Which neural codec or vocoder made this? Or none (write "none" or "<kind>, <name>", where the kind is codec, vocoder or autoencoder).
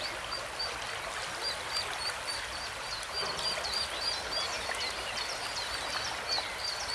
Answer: none